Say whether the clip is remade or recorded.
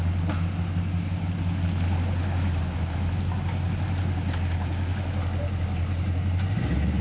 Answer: recorded